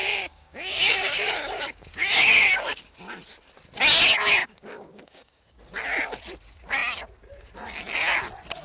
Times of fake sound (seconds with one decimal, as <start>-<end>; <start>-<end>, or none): 0.0-2.8; 4.4-5.6